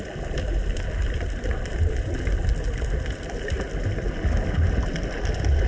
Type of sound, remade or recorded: recorded